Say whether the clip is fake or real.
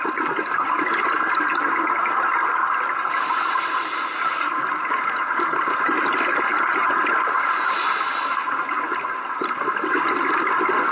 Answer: real